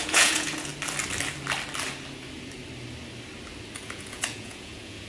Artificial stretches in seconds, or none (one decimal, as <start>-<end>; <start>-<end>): 0.0-0.7; 3.8-5.1